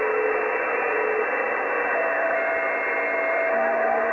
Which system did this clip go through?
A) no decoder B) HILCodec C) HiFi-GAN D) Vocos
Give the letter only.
A